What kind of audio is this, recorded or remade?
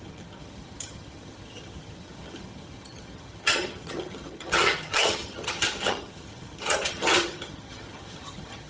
remade